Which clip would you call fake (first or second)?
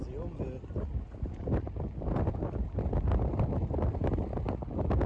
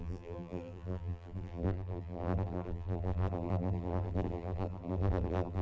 second